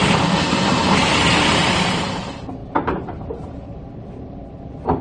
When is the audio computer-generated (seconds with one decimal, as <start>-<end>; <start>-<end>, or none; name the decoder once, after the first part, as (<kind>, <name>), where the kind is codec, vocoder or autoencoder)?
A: 1.0-2.6 (vocoder, BigVGAN v2)